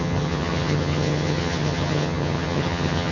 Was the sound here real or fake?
fake